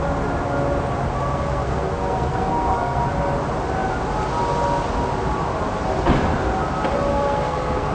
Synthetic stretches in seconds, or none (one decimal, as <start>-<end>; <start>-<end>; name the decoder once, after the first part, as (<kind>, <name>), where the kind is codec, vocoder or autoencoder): 1.1-3.0 (codec, SNAC); 7.1-7.9